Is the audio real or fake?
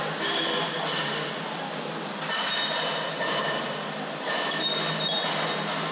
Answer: real